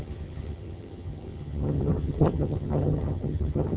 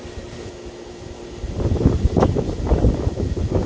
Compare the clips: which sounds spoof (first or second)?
first